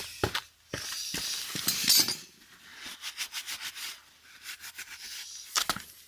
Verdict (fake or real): real